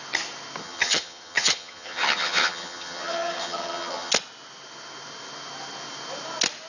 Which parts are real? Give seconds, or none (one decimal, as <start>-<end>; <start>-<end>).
0.0-0.6; 4.1-6.7